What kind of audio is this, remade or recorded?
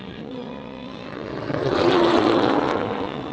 remade